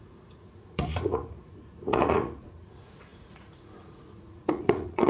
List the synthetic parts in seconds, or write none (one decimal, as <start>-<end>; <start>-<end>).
0.0-5.1